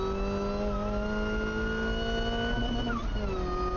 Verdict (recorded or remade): recorded